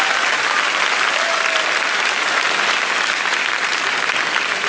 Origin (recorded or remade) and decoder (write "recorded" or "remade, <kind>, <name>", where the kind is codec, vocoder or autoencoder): recorded